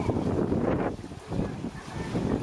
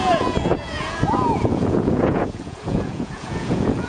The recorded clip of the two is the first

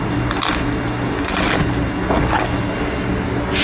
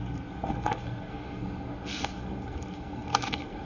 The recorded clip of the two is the first